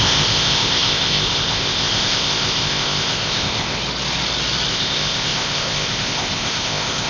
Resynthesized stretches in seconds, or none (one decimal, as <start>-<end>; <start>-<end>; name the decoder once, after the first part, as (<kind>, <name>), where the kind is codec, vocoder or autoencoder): 0.0-3.8 (codec, ZipCodec); 4.7-7.1